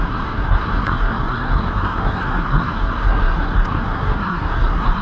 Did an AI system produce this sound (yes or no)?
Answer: yes